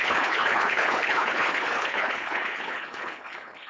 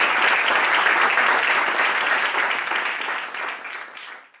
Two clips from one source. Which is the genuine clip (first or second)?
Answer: second